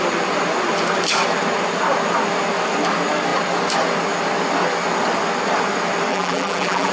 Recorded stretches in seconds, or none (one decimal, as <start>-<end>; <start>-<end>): 0.0-6.1